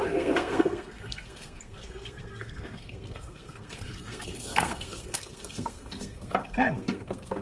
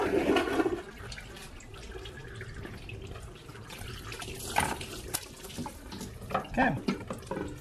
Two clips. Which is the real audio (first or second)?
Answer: second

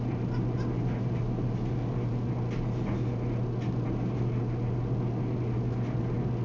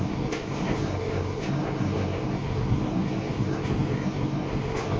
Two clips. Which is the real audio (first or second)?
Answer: first